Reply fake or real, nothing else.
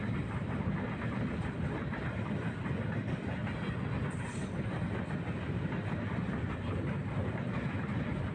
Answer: real